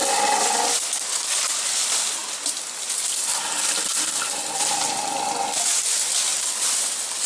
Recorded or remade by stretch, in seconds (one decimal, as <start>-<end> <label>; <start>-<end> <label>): 0.0-7.3 recorded